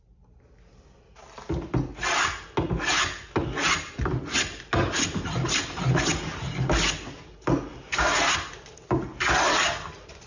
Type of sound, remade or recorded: recorded